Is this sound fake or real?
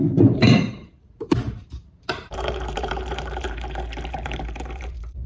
fake